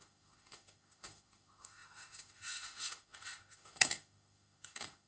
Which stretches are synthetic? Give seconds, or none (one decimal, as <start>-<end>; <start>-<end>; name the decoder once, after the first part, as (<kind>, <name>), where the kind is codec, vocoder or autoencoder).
0.0-5.1 (autoencoder, DAC-VAE)